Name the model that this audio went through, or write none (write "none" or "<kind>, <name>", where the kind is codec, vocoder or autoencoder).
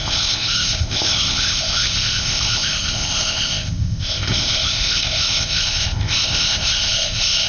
codec, ZipCodec